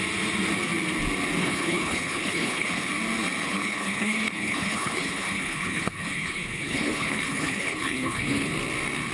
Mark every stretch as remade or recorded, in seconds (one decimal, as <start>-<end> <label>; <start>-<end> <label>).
0.0-1.4 recorded; 1.4-2.9 remade; 2.9-3.4 recorded; 3.4-8.5 remade; 8.5-9.1 recorded